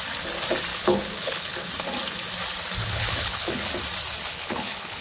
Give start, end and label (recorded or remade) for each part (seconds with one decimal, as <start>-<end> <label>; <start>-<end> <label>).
0.0-0.7 recorded; 0.7-1.7 remade; 1.7-2.8 recorded; 2.8-3.7 remade; 3.7-4.3 recorded; 4.3-5.0 remade